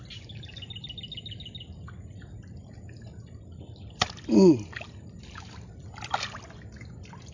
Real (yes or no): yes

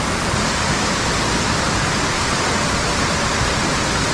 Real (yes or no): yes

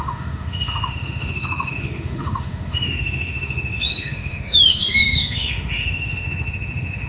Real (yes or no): no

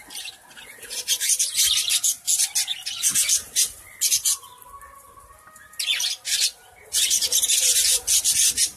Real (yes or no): yes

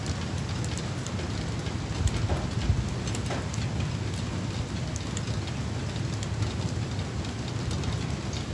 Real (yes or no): yes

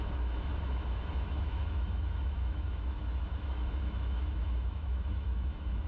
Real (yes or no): no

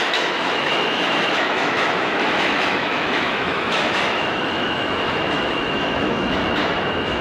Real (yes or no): no